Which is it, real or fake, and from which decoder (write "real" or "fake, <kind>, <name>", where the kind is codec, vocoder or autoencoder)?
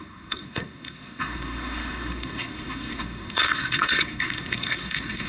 fake, codec, SNAC